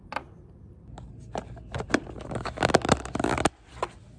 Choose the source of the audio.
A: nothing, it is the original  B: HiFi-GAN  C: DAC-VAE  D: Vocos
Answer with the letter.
A